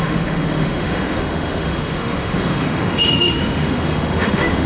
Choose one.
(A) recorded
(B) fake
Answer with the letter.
B